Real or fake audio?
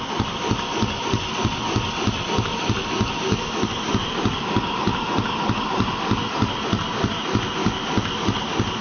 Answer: real